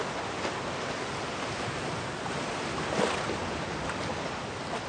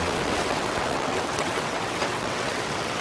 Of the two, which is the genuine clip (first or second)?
first